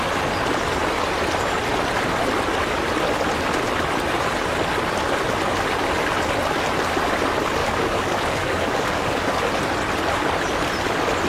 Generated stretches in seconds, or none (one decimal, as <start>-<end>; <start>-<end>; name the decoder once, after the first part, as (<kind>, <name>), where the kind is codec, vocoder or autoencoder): 7.6-9.4 (codec, DAC)